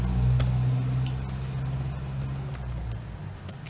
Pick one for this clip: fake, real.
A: real